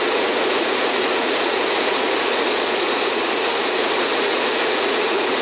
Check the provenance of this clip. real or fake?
fake